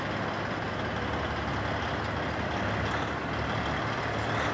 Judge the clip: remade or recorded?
recorded